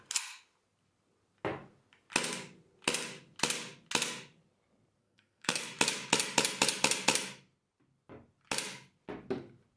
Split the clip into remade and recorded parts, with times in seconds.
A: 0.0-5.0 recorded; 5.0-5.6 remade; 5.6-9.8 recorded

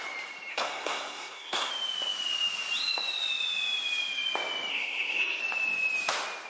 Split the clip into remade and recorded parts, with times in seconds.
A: 0.0-0.5 recorded; 0.5-1.7 remade; 1.7-4.7 recorded; 4.7-5.4 remade; 5.4-6.5 recorded

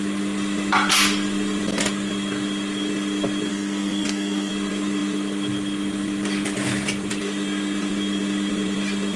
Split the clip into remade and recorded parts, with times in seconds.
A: 0.0-3.5 recorded; 3.5-4.5 remade; 4.5-9.2 recorded

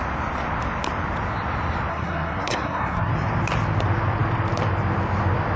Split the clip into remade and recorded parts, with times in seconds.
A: 0.0-1.9 recorded; 1.9-3.1 remade; 3.1-5.6 recorded

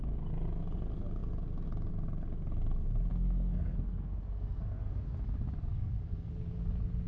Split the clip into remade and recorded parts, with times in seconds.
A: 0.0-3.1 recorded; 3.1-5.0 remade; 5.0-5.7 recorded; 5.7-6.3 remade; 6.3-7.1 recorded